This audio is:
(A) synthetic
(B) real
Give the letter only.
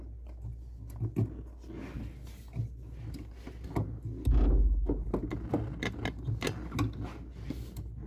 B